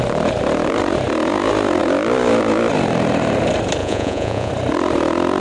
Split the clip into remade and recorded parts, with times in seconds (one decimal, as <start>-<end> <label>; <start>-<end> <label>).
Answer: 0.0-3.8 recorded; 3.8-4.5 remade; 4.5-5.4 recorded